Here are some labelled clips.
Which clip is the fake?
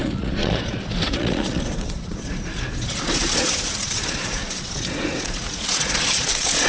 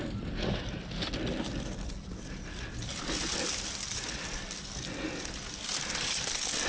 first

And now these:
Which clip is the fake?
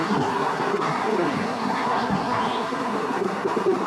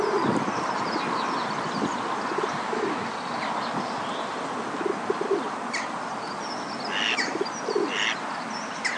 first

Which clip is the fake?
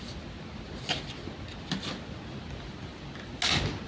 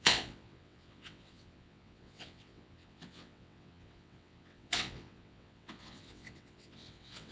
second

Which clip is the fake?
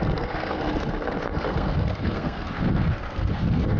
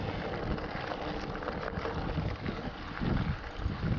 first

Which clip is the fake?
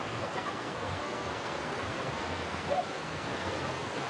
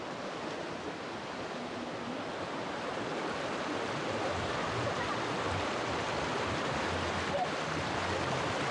first